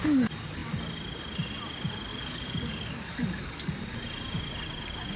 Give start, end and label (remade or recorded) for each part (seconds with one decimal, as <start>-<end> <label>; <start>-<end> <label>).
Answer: 0.0-2.1 recorded; 2.1-3.7 remade; 3.7-5.2 recorded